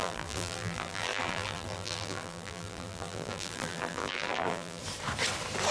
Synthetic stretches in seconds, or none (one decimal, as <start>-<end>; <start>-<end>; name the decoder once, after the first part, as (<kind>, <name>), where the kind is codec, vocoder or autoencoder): 0.0-4.8 (vocoder, BigVGAN v2)